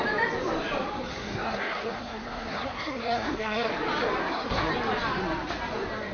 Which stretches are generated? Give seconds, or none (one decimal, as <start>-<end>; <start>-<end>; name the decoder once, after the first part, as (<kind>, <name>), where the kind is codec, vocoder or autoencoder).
1.1-3.7 (codec, SNAC); 4.2-4.7